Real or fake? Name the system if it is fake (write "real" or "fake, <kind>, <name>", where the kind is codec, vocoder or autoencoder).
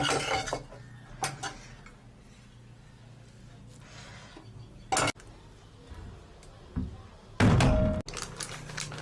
real